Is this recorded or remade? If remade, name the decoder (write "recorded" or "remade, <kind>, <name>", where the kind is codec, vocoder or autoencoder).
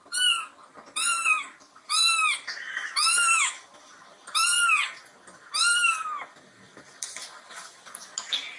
recorded